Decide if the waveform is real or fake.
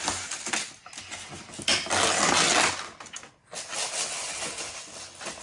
real